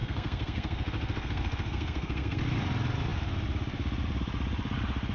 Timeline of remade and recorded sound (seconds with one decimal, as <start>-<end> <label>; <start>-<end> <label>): 0.0-2.4 remade; 2.4-5.1 recorded